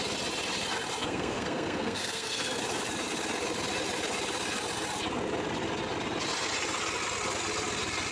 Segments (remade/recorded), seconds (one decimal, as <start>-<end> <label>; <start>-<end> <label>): 0.0-1.0 recorded; 1.0-2.6 remade; 2.6-8.1 recorded